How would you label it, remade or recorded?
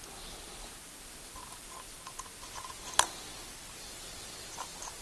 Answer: recorded